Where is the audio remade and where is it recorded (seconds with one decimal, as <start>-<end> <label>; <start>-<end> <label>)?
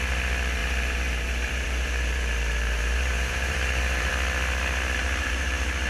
0.0-0.6 recorded; 0.6-4.1 remade; 4.1-5.0 recorded; 5.0-5.9 remade